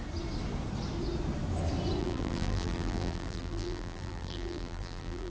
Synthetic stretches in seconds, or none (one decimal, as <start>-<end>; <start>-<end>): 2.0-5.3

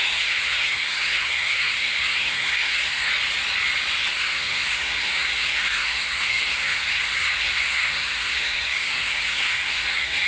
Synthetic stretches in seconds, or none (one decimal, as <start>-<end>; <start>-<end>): 0.0-3.1; 4.1-10.3

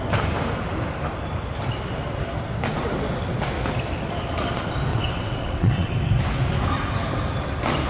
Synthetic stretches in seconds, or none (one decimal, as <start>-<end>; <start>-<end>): 4.9-5.9